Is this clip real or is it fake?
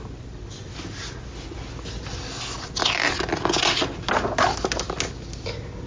real